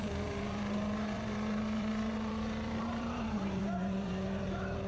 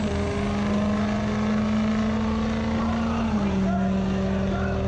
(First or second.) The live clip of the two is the second